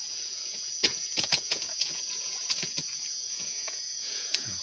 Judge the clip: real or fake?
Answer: fake